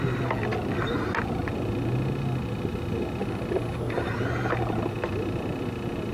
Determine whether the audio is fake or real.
real